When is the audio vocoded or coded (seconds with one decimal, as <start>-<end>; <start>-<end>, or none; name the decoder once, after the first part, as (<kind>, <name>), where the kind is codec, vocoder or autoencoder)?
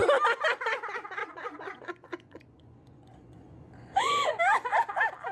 1.2-4.4 (vocoder, Vocos)